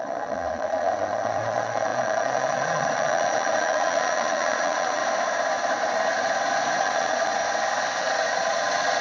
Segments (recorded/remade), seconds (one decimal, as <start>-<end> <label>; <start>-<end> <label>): 0.0-5.0 remade; 5.0-6.8 recorded; 6.8-7.4 remade; 7.4-8.0 recorded; 8.0-9.0 remade